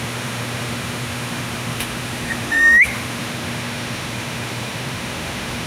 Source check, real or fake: fake